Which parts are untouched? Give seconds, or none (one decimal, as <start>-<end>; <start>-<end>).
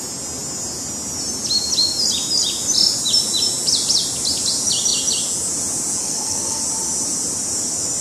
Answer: 0.0-6.0; 6.6-8.0